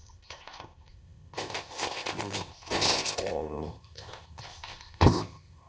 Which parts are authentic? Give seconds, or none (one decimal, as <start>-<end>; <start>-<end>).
none